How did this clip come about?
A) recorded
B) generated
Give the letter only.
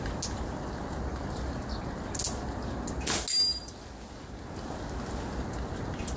A